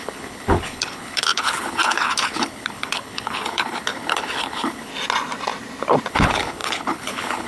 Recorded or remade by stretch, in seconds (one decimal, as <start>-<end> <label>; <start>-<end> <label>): 0.0-4.9 remade; 4.9-6.1 recorded; 6.1-7.5 remade